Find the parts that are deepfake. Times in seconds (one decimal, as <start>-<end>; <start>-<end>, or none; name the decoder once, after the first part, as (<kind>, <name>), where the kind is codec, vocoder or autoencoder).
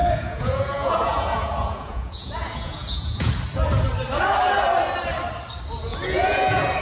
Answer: 0.0-3.3 (vocoder, Vocos); 5.9-6.8